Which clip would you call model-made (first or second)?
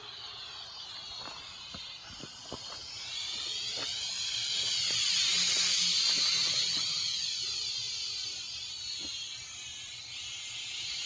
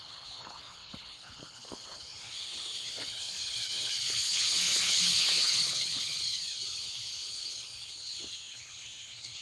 second